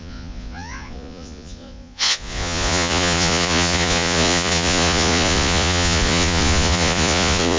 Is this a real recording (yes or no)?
no